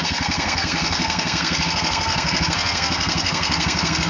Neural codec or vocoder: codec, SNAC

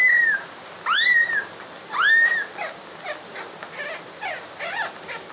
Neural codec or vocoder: none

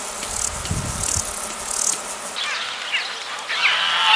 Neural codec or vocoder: none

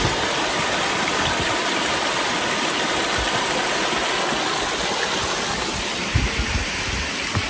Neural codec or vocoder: none